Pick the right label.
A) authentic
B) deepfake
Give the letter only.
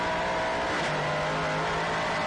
A